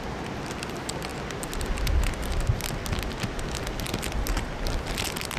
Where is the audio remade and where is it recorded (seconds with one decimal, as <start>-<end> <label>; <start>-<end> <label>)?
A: 0.0-5.4 recorded